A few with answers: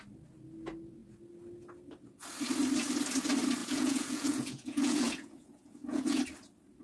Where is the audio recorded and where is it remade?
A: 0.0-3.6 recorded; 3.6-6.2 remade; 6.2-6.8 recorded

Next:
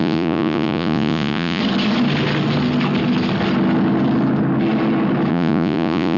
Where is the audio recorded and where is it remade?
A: 0.0-1.6 remade; 1.6-5.3 recorded; 5.3-6.2 remade